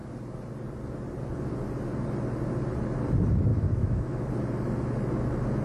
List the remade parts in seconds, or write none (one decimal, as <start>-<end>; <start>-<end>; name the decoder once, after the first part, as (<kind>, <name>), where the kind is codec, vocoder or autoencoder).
3.5-4.3 (autoencoder, DAC-VAE)